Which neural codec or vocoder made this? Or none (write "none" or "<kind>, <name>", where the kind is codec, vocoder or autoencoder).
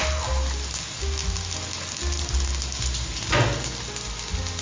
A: none